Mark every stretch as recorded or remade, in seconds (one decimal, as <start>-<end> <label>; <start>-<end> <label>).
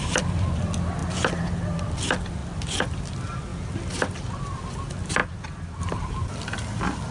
0.0-2.4 remade; 2.4-3.0 recorded; 3.0-3.5 remade; 3.5-4.8 recorded; 4.8-5.2 remade; 5.2-5.8 recorded; 5.8-7.1 remade